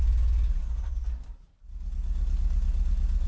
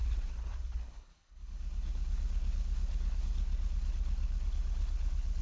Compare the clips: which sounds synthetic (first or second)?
second